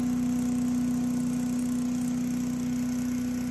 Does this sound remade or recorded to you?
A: recorded